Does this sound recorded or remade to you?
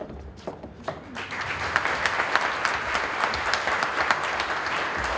recorded